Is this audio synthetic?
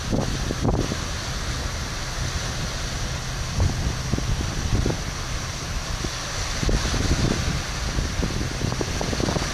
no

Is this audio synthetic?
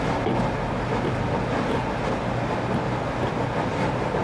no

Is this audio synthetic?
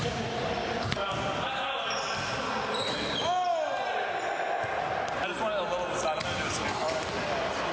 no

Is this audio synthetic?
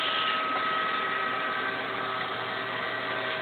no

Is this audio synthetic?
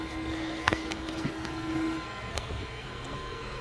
yes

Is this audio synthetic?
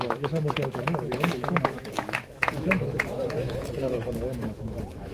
yes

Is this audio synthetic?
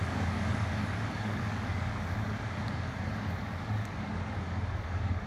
yes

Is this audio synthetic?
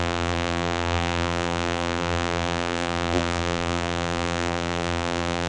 yes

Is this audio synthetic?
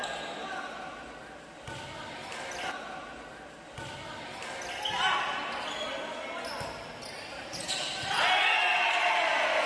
no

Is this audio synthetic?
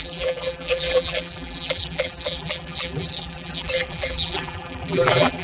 yes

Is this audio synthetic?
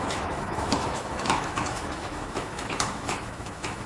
yes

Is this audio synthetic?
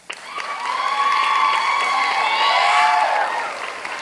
no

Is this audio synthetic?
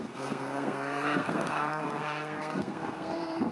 yes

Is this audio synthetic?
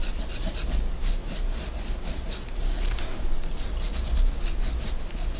no